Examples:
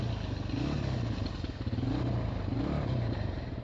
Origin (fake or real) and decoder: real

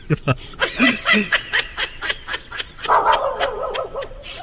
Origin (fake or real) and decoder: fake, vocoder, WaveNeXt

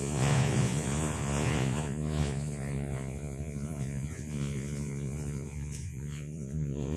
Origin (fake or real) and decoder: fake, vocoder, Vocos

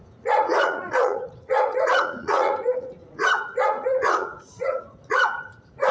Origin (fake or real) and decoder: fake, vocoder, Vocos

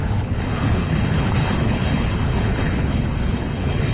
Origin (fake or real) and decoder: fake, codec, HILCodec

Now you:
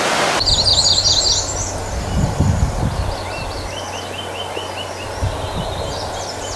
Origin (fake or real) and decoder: real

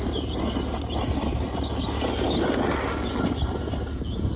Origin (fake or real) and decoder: real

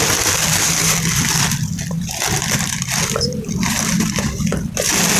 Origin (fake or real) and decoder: fake, vocoder, BigVGAN v2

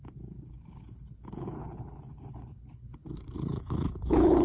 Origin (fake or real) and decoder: fake, codec, HILCodec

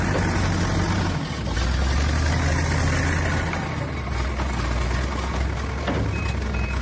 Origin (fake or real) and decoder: real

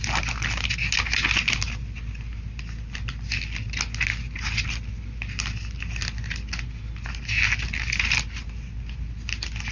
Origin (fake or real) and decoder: real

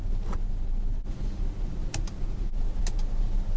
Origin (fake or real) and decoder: real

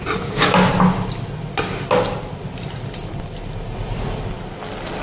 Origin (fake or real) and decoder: real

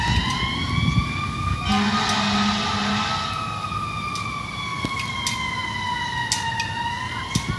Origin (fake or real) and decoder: real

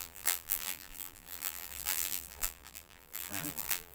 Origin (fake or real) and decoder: fake, vocoder, BigVGAN v2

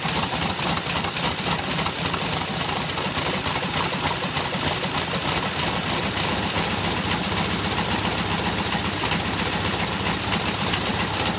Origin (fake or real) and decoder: real